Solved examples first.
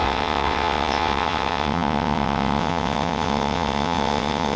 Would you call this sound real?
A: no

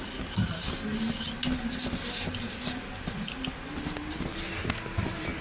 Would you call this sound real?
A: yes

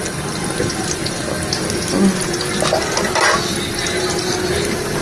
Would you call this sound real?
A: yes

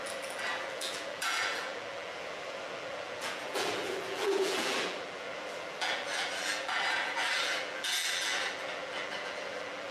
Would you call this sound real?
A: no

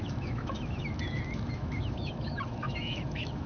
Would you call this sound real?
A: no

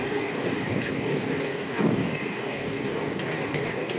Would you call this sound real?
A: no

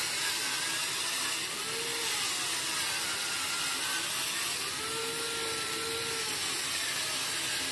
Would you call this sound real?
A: yes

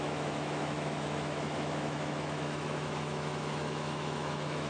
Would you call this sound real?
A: no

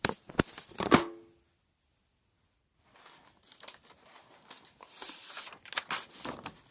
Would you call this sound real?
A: yes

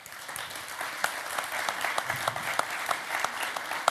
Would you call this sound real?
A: yes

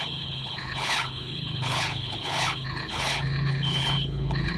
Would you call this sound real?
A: no